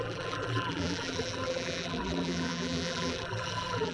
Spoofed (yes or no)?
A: yes